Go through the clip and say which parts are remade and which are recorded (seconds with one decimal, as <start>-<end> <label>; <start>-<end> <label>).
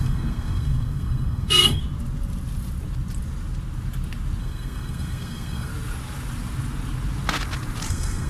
0.0-1.8 remade; 1.8-4.4 recorded; 4.4-5.7 remade; 5.7-7.9 recorded; 7.9-8.3 remade